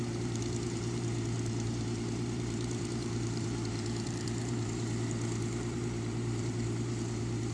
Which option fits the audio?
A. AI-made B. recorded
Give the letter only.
A